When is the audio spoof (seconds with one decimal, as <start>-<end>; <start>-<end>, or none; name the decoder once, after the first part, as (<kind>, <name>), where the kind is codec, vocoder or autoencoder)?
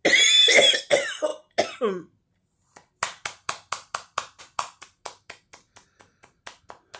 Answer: none